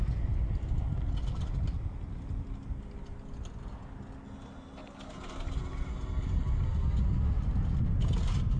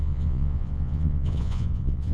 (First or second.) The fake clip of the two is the second